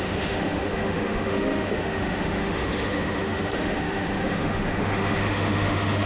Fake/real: fake